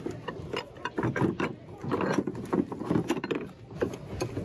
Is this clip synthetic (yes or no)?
no